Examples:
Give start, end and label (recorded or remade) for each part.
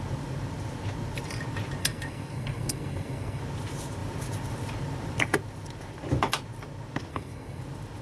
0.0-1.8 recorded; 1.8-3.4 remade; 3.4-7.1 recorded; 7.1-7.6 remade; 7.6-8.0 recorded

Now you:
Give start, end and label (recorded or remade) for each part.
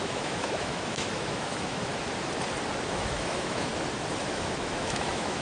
0.0-1.9 remade; 1.9-2.9 recorded; 2.9-3.7 remade; 3.7-4.2 recorded; 4.2-5.4 remade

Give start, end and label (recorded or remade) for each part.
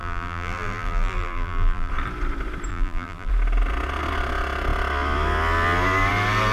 0.0-1.9 remade; 1.9-2.7 recorded; 2.7-3.3 remade; 3.3-6.5 recorded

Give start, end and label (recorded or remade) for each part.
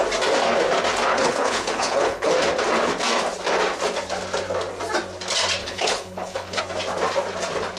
0.0-1.1 recorded; 1.1-2.3 remade; 2.3-5.6 recorded; 5.6-6.6 remade; 6.6-7.8 recorded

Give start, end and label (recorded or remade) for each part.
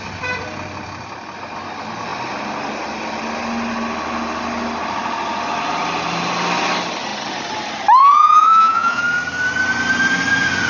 0.0-8.0 recorded; 8.0-9.0 remade; 9.0-10.7 recorded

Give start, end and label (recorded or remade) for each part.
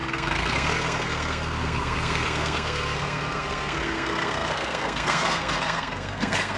0.0-6.6 remade